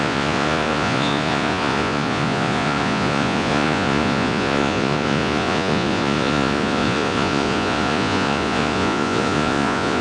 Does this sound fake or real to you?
fake